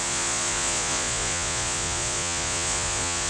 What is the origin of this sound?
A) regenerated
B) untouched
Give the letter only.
A